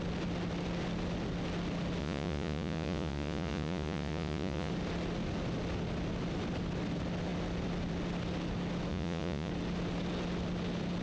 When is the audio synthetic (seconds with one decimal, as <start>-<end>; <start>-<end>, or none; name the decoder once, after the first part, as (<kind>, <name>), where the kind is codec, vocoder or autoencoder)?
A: 2.0-4.7 (vocoder, Vocos); 8.9-9.5

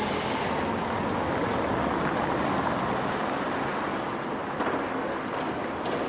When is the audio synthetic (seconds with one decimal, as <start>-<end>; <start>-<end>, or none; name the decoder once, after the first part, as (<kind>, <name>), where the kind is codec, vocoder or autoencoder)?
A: none

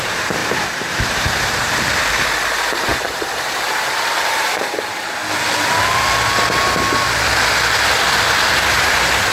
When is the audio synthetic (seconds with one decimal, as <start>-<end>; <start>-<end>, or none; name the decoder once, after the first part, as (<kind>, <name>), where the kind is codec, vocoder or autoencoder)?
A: 0.0-5.2 (vocoder, BigVGAN v2); 8.2-9.3

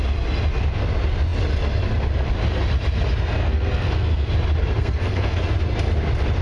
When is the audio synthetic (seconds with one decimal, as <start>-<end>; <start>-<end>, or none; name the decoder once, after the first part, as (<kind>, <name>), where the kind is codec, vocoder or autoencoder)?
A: 3.4-4.3 (codec, SNAC); 4.8-5.4

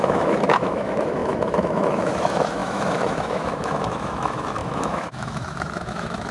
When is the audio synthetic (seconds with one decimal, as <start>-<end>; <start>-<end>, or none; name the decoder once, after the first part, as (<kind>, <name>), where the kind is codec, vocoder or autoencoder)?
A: 0.0-6.3 (autoencoder, DAC-VAE)

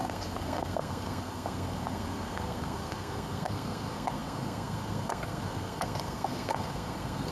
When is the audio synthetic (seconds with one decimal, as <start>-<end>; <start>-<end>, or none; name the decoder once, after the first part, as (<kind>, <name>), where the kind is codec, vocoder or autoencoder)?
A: 0.0-7.3 (codec, SNAC)